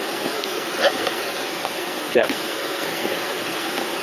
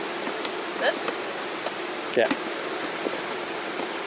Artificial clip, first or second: first